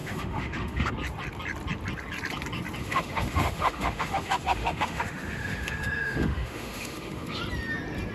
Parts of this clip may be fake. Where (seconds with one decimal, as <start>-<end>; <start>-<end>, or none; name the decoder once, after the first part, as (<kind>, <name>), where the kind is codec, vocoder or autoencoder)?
0.0-0.9 (autoencoder, DAC-VAE); 2.8-7.4